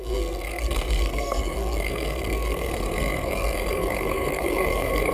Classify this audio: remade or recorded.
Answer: remade